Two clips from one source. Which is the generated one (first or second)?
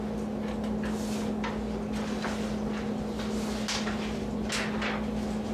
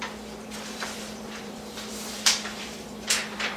second